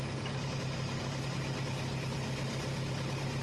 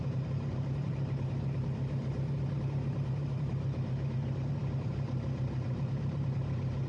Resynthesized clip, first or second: second